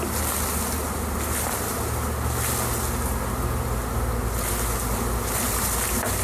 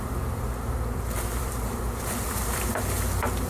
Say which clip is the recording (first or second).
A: first